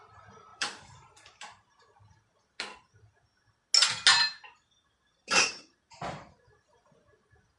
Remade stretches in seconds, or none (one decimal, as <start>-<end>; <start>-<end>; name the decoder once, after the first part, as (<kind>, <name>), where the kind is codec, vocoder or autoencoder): 0.5-2.0 (vocoder, BigVGAN v2); 4.1-6.6